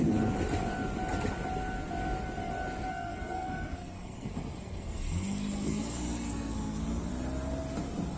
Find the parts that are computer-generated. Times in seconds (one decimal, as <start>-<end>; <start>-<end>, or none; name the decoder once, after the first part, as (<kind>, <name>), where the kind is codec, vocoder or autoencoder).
2.9-7.1 (codec, SNAC)